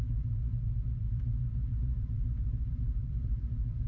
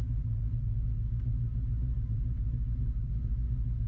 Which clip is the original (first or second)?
second